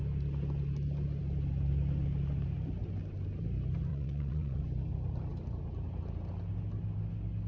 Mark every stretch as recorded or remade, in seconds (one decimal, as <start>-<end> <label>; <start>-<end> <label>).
0.0-3.9 recorded; 3.9-4.6 remade; 4.6-7.5 recorded